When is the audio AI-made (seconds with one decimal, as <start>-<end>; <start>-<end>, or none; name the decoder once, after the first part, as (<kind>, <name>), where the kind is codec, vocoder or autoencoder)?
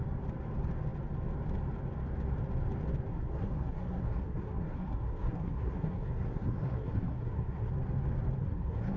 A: 3.1-7.7 (codec, SNAC); 8.4-9.0